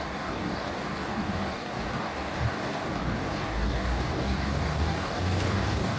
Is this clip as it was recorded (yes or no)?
no